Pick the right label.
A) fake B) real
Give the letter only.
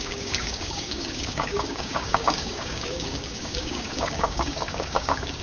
A